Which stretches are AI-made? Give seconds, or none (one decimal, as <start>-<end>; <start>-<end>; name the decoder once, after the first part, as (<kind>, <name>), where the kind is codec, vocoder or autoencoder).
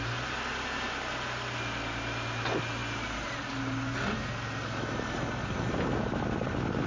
none